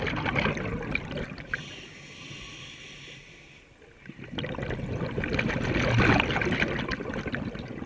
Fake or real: real